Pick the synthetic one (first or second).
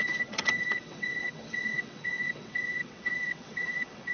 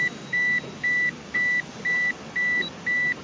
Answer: first